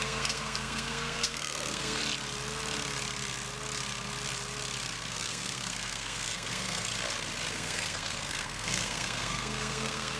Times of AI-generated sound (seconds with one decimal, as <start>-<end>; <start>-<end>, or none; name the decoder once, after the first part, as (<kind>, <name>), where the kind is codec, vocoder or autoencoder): 0.0-2.0 (codec, SNAC); 5.1-6.9; 7.5-10.2